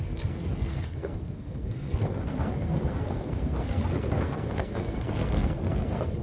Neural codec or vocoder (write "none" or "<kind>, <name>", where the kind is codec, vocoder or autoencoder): codec, SNAC